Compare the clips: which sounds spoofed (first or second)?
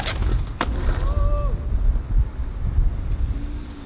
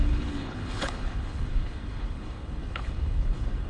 second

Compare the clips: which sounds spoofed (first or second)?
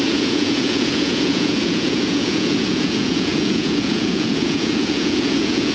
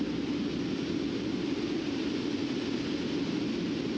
first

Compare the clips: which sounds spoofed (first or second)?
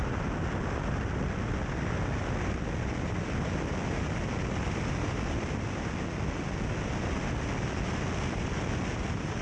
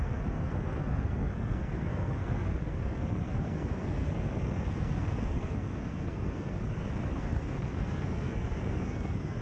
second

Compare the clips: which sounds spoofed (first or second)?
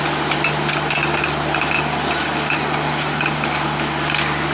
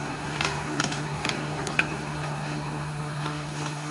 second